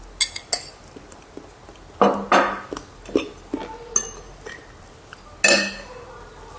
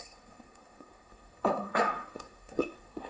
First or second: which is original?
first